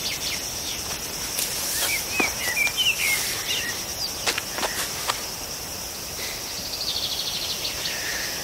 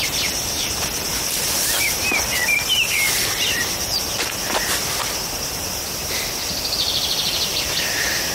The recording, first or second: first